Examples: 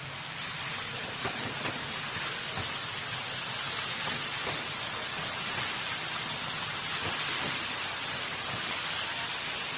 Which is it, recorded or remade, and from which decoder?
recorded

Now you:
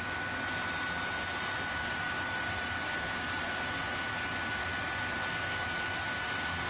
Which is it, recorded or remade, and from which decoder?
recorded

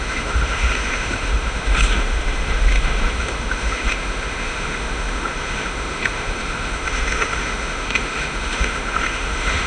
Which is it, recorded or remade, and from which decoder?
remade, autoencoder, DAC-VAE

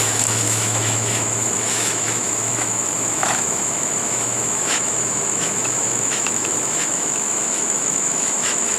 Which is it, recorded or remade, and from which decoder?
remade, autoencoder, DAC-VAE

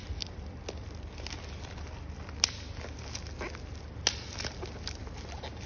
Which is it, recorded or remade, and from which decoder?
recorded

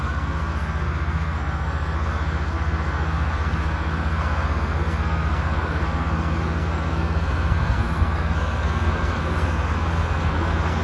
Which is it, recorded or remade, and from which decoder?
remade, codec, SNAC